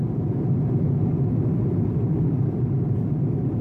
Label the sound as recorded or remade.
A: remade